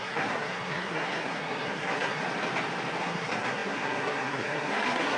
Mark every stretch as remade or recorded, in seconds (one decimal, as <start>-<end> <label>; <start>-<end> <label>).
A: 0.0-2.2 remade; 2.2-3.0 recorded; 3.0-5.2 remade